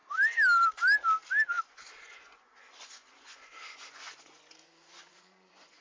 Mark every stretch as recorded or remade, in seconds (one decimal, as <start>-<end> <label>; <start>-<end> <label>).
0.0-1.6 recorded; 1.6-5.8 remade